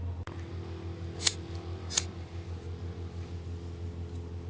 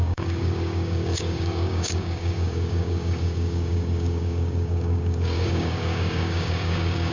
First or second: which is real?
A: first